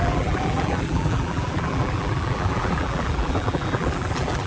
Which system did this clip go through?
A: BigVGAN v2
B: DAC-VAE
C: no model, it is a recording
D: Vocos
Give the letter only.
A